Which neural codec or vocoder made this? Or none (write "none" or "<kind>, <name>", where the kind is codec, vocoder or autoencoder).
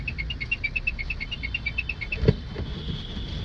none